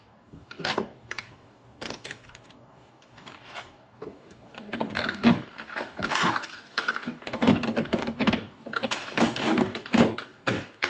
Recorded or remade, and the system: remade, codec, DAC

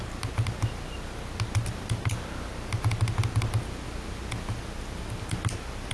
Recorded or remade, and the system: recorded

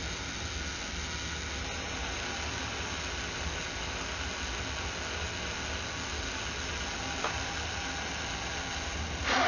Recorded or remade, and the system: recorded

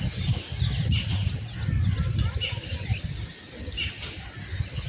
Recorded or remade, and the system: recorded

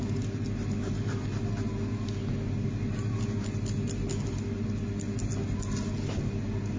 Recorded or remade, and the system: recorded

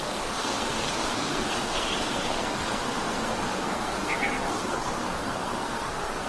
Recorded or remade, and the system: remade, codec, SNAC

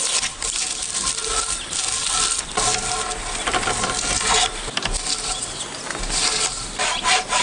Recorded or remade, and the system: recorded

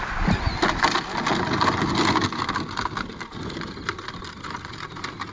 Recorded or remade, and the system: recorded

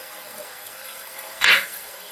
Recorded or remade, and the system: remade, codec, SNAC